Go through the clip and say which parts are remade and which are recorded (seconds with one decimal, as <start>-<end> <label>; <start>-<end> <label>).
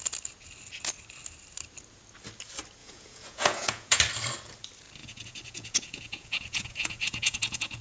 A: 0.0-2.8 recorded; 2.8-4.0 remade; 4.0-5.0 recorded; 5.0-7.8 remade